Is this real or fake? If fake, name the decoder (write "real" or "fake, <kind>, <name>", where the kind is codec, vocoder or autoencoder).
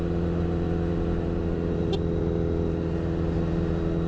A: real